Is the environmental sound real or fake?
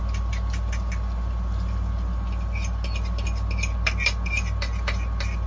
real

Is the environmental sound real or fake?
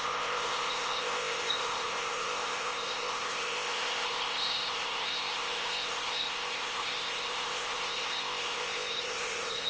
fake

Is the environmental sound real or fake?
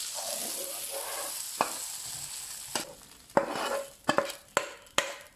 real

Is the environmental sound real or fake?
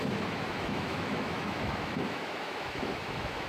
fake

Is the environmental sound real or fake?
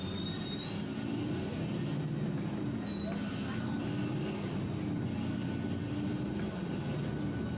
real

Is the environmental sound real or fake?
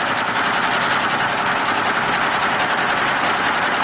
real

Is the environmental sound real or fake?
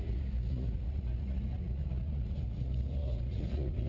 fake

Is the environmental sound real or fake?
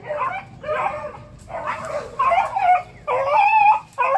real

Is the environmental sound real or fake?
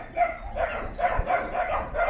fake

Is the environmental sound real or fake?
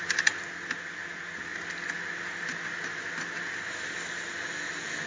real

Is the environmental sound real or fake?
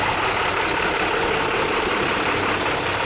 real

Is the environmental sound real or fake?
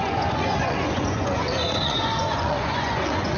fake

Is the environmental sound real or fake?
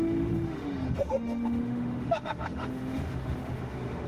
fake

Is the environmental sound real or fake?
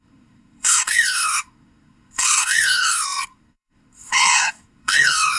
fake